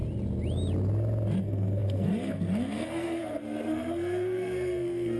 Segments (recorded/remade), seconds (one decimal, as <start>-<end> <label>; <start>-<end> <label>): 0.0-1.4 recorded; 1.4-5.2 remade